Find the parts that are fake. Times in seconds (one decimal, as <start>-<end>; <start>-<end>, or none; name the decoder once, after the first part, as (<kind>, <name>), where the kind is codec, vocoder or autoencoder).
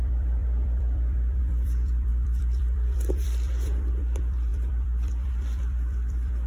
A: 0.0-6.5 (vocoder, BigVGAN v2)